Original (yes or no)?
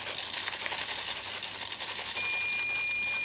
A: yes